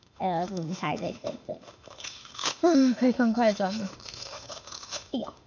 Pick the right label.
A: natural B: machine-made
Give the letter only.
B